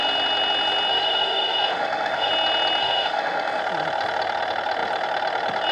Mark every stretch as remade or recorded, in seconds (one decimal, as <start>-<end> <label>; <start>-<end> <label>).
0.0-0.9 recorded; 0.9-2.3 remade; 2.3-2.8 recorded; 2.8-3.6 remade; 3.6-5.7 recorded